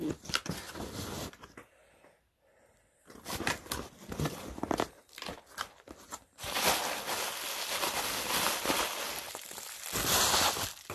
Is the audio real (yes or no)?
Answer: yes